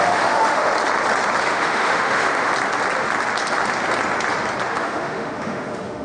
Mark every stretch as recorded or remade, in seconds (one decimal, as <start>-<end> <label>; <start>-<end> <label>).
0.0-0.7 remade; 0.7-1.4 recorded; 1.4-2.5 remade; 2.5-4.7 recorded; 4.7-6.0 remade